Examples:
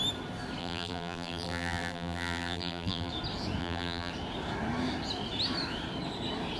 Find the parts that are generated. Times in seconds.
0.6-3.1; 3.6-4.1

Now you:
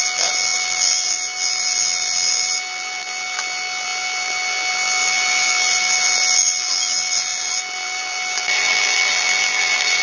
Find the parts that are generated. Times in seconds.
0.0-10.0